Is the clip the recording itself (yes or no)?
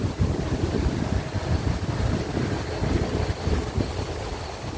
yes